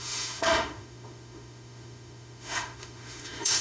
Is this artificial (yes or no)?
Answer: yes